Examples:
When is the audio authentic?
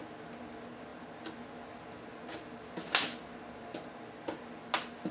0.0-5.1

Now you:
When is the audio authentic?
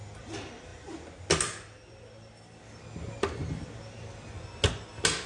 0.0-5.3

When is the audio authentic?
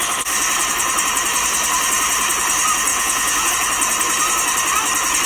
0.0-2.9; 3.5-5.3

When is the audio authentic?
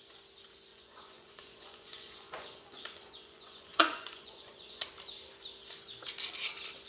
0.0-0.7; 4.8-6.9